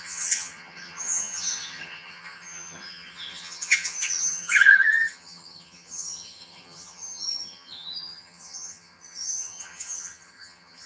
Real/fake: fake